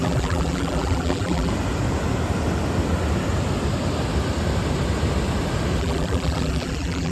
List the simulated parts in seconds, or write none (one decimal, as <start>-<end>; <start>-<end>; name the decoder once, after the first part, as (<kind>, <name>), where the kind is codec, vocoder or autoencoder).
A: 0.0-1.5 (vocoder, BigVGAN v2); 5.8-7.1